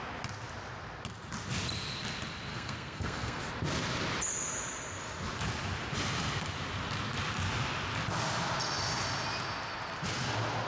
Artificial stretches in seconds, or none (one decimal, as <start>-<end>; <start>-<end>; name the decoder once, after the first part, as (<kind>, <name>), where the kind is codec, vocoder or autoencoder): 2.5-3.4 (codec, SNAC)